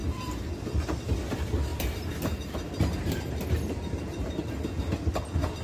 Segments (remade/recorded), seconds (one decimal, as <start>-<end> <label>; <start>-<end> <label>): 0.0-0.5 remade; 0.5-1.7 recorded; 1.7-4.5 remade; 4.5-5.6 recorded